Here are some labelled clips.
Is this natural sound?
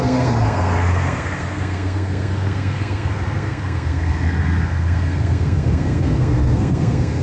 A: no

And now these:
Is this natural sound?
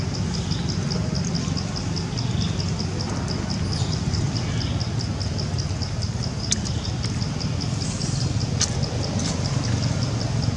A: yes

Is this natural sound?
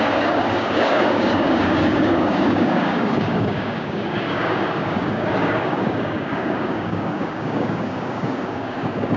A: no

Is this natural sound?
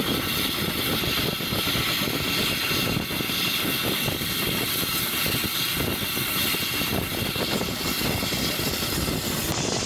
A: yes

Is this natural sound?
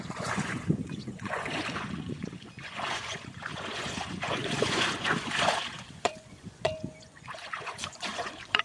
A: no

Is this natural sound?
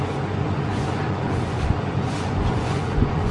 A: no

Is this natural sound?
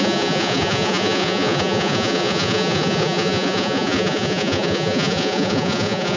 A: no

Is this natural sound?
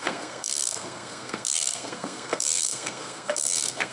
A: no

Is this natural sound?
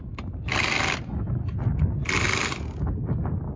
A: yes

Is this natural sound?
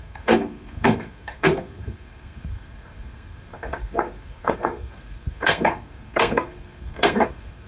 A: no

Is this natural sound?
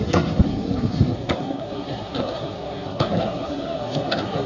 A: no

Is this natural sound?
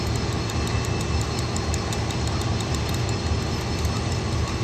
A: yes